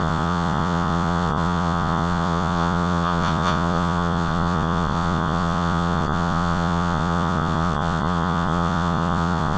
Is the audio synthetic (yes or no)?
yes